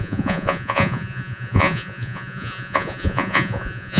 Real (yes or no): no